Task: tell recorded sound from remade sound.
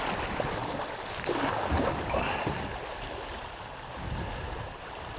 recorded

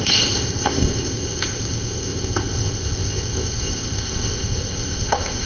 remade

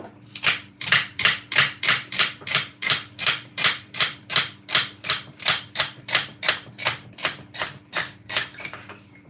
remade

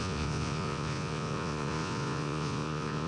remade